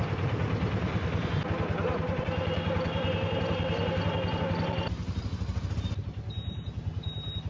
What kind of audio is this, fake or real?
real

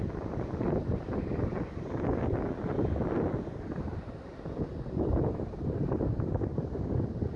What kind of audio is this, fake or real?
real